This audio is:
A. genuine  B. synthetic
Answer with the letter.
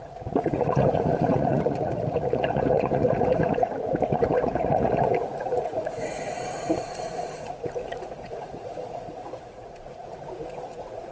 B